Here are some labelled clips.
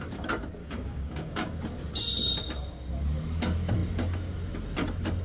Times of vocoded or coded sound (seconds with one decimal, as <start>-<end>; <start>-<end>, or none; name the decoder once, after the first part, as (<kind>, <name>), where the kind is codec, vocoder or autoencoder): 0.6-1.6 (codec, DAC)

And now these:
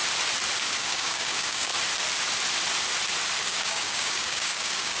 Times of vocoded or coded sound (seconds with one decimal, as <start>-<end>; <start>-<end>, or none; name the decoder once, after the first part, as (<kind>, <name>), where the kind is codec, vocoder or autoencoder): 0.6-1.7 (codec, DAC); 3.4-5.0

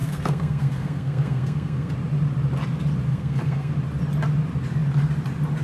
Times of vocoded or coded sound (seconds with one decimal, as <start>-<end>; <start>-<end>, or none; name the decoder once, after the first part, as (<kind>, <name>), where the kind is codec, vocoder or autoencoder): 0.0-1.9 (codec, SNAC); 3.1-3.7